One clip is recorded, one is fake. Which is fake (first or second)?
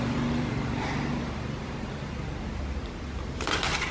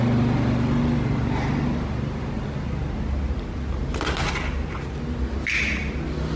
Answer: first